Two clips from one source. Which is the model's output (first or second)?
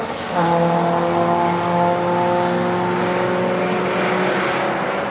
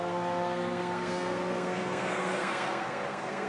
second